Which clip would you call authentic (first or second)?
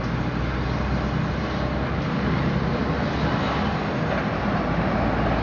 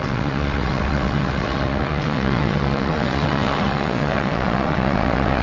first